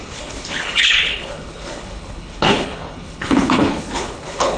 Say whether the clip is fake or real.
fake